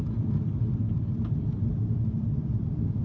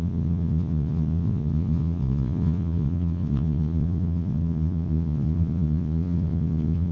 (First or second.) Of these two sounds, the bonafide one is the first